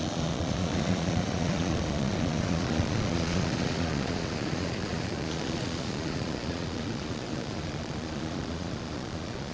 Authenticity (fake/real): fake